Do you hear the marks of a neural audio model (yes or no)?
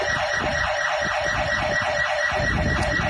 no